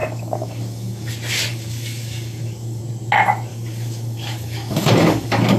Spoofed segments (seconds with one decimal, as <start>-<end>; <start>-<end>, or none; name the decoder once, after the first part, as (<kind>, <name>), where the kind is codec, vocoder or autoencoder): 0.0-1.1 (codec, DAC); 1.5-2.8; 3.5-5.6